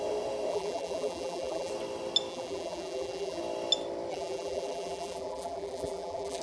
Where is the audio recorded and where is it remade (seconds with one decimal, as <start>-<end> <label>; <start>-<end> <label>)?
0.0-0.5 recorded; 0.5-1.7 remade; 1.7-2.3 recorded; 2.3-3.4 remade; 3.4-4.1 recorded; 4.1-6.4 remade